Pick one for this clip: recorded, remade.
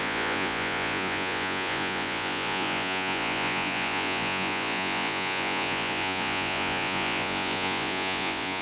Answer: remade